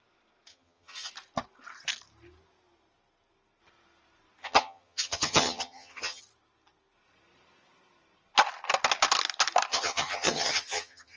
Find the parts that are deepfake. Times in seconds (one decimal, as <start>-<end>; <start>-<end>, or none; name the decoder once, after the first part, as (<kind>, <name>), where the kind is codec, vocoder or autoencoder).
0.5-1.1 (vocoder, HiFi-GAN); 4.4-6.2; 9.7-11.2